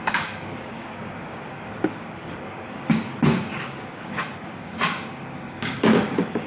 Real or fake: fake